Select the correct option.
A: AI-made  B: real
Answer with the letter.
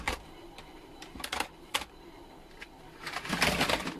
B